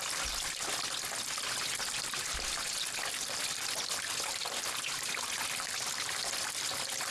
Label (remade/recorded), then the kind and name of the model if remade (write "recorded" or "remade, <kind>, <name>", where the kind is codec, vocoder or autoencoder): recorded